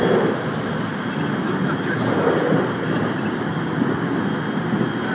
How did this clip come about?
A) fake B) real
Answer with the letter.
B